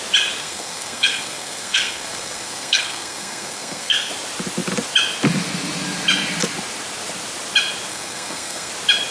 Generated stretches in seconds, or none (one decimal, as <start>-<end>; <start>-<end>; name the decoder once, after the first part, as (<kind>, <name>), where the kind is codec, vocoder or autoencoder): 0.4-4.1 (codec, SNAC); 7.9-8.7